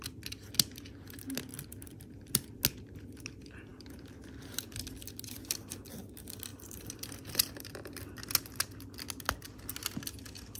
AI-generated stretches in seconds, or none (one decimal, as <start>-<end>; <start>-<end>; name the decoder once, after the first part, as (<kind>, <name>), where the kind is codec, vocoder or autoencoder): 1.5-2.6 (vocoder, BigVGAN v2); 6.5-8.0